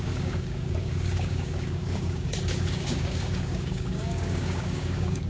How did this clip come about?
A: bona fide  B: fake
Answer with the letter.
B